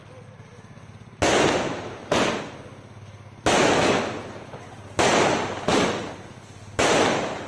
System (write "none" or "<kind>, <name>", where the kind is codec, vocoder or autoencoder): none